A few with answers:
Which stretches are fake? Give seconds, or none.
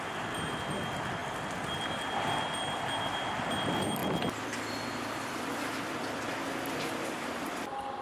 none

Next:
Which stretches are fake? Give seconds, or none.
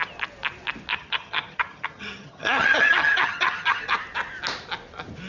0.9-3.8 (vocoder, HiFi-GAN)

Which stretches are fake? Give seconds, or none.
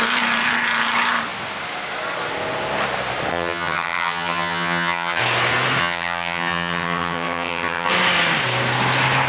3.3-5.2 (vocoder, HiFi-GAN); 5.8-7.9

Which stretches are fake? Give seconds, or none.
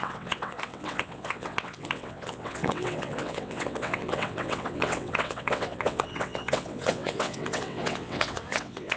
0.0-9.0 (vocoder, WaveNeXt)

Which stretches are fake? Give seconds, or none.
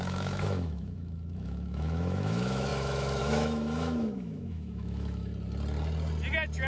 0.0-5.3 (autoencoder, DAC-VAE)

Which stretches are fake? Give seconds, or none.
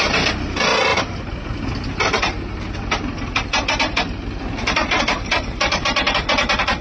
none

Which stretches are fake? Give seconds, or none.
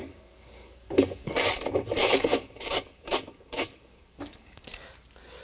0.0-1.5 (codec, DAC); 2.0-4.7